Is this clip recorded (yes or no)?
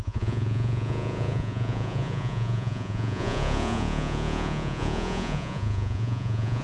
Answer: no